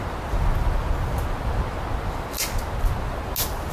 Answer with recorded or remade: recorded